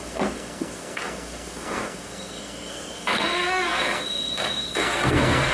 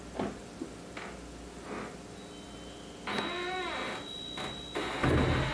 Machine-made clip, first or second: first